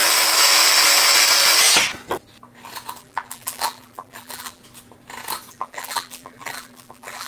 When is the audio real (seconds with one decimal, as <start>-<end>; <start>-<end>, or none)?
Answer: 0.0-3.0; 4.6-5.5